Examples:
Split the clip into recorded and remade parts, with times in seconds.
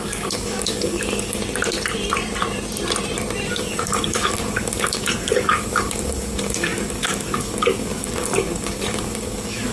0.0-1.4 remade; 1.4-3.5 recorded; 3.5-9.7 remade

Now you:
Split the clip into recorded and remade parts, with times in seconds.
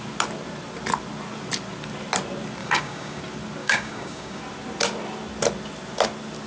0.0-2.6 recorded; 2.6-3.2 remade; 3.2-3.6 recorded; 3.6-4.4 remade; 4.4-6.5 recorded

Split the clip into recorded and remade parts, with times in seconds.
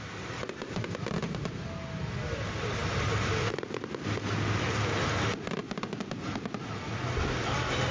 0.0-7.9 recorded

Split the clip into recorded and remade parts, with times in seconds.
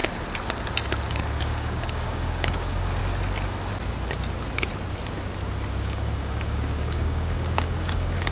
0.0-1.1 recorded; 1.1-3.0 remade; 3.0-5.8 recorded; 5.8-8.3 remade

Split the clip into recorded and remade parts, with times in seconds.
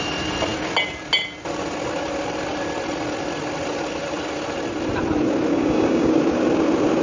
0.0-5.5 recorded; 5.5-6.1 remade; 6.1-7.0 recorded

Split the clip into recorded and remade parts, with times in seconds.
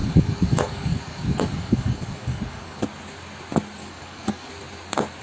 0.0-2.8 remade; 2.8-3.8 recorded; 3.8-4.5 remade; 4.5-5.2 recorded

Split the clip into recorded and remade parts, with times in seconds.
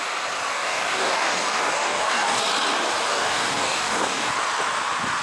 0.0-0.5 recorded; 0.5-2.4 remade; 2.4-3.1 recorded; 3.1-4.3 remade; 4.3-5.2 recorded